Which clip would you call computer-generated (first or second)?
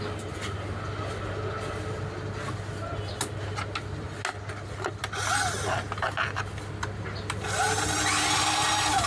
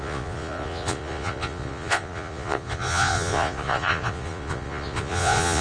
second